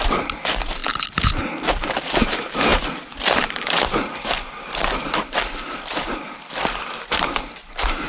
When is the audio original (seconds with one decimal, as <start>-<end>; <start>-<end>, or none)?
0.8-1.3